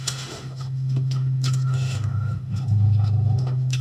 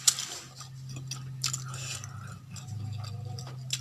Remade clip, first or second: first